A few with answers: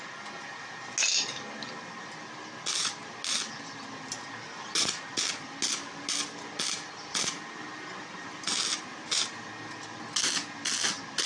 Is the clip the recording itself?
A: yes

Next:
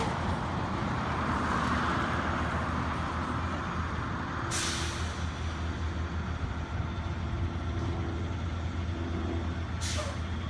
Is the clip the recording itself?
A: yes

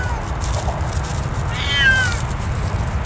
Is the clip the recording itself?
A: yes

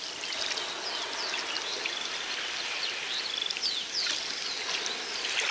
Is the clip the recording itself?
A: yes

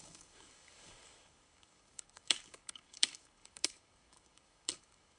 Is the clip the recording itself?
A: no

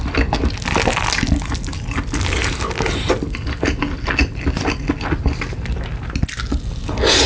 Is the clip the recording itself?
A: yes